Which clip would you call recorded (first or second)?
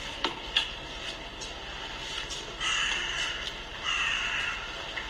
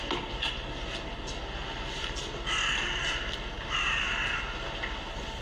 second